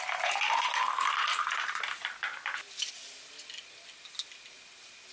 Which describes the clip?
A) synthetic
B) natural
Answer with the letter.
B